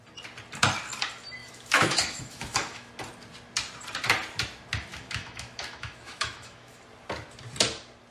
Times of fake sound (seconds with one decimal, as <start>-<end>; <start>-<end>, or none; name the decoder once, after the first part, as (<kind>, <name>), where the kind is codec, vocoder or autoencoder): 1.4-2.9 (autoencoder, DAC-VAE); 4.9-6.8